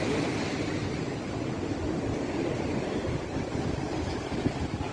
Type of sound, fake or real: real